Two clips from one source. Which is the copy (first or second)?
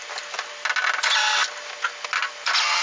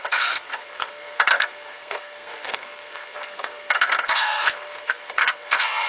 second